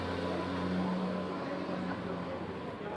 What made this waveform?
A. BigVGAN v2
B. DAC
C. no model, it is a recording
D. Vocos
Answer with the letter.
C